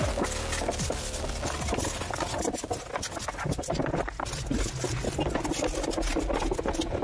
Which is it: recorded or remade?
recorded